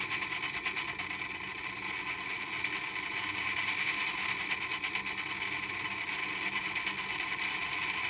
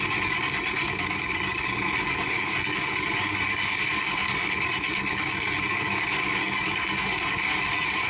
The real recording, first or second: first